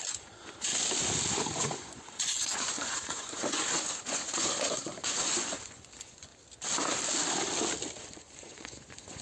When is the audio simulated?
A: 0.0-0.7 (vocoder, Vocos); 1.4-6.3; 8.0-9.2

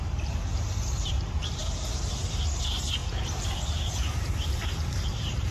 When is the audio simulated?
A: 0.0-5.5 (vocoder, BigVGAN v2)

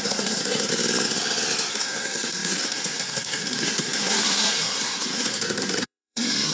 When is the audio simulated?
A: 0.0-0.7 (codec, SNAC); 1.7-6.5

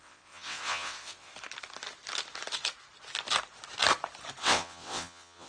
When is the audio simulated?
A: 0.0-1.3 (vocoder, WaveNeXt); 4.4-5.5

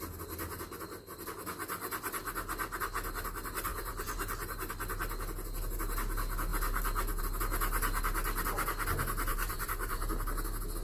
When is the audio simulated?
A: 3.7-4.7 (vocoder, BigVGAN v2); 9.3-10.1